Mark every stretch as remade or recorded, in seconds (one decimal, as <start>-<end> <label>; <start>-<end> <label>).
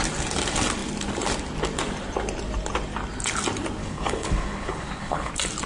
0.0-3.8 recorded; 3.8-5.3 remade; 5.3-5.7 recorded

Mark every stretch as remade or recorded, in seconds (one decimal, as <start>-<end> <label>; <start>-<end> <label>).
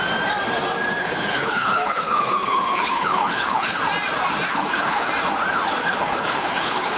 0.0-1.0 recorded; 1.0-3.8 remade; 3.8-4.5 recorded; 4.5-5.1 remade; 5.1-5.8 recorded; 5.8-7.0 remade